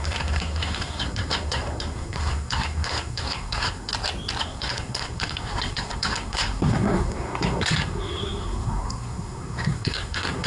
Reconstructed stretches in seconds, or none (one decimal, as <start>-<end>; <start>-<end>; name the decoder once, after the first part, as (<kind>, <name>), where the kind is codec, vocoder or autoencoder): 0.0-3.9 (codec, SNAC); 4.4-10.5

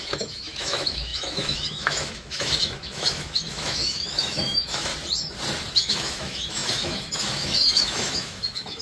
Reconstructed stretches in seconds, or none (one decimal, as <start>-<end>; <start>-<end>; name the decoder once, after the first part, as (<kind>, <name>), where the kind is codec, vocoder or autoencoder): 0.0-4.9 (autoencoder, DAC-VAE); 5.7-8.8

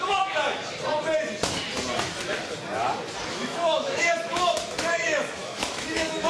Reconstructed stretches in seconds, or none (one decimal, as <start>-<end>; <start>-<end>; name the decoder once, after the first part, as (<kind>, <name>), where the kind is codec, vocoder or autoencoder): 0.0-0.6 (autoencoder, DAC-VAE); 3.3-6.3

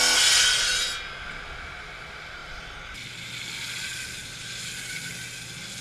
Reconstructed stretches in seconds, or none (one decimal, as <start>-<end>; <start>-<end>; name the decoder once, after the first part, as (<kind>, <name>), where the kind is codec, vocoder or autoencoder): 2.4-3.0 (vocoder, BigVGAN v2); 4.2-5.0

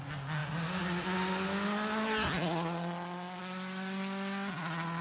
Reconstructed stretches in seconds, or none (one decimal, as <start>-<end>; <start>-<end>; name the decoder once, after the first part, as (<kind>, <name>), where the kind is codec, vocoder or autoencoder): none

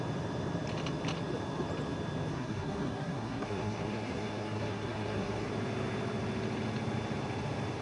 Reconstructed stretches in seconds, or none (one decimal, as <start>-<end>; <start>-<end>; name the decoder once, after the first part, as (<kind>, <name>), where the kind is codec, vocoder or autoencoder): 2.3-5.5 (codec, SNAC)